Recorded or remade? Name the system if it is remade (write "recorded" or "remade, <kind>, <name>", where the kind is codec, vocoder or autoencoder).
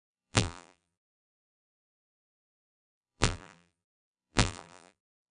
remade, vocoder, BigVGAN v2